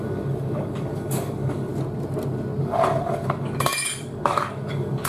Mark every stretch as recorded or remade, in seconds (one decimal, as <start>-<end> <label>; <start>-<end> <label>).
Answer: 0.0-1.7 remade; 1.7-2.6 recorded; 2.6-5.1 remade